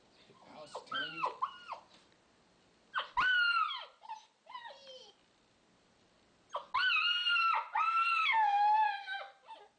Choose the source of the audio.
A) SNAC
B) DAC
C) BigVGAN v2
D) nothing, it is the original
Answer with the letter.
D